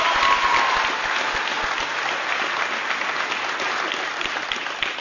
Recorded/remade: recorded